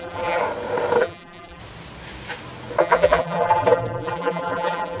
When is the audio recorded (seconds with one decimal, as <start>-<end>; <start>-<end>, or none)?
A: 0.4-1.0; 1.6-2.8